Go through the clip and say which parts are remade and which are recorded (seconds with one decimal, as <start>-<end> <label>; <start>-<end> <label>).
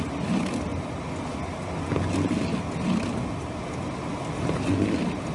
0.0-5.3 recorded